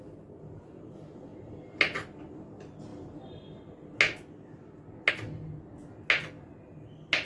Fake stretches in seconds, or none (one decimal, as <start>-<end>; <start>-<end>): none